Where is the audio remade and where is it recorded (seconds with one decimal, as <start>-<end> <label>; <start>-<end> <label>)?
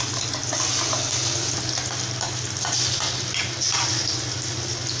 0.0-5.0 recorded